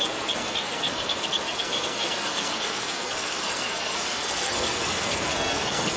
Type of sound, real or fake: fake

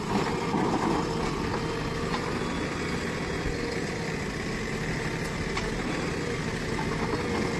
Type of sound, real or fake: real